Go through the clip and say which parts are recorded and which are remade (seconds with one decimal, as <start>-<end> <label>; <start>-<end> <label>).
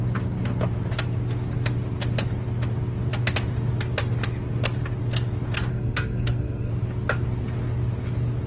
0.0-5.7 recorded; 5.7-6.7 remade; 6.7-8.5 recorded